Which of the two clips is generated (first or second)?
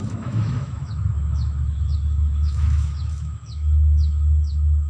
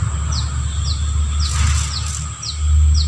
first